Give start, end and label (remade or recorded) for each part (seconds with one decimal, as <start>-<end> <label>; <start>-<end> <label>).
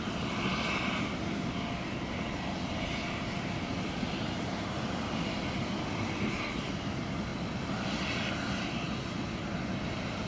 0.0-10.3 recorded